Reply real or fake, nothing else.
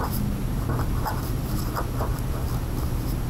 real